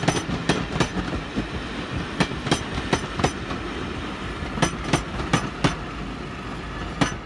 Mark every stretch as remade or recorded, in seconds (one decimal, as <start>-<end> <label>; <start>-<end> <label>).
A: 0.0-7.3 recorded